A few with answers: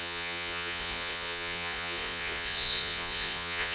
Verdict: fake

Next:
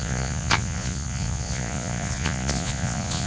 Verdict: fake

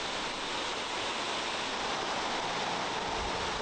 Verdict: real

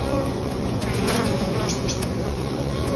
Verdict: fake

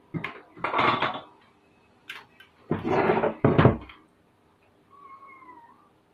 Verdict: real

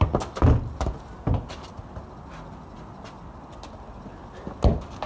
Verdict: real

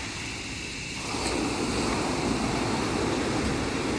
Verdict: real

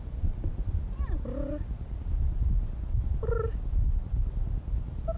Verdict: real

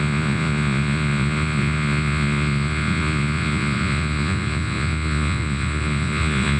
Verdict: fake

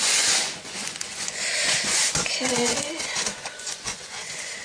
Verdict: fake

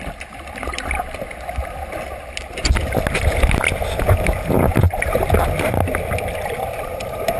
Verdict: real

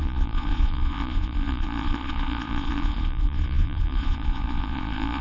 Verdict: fake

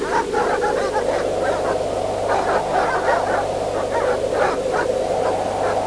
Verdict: real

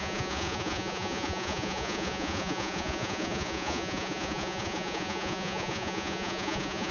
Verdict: fake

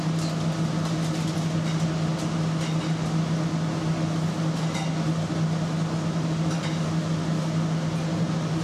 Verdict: real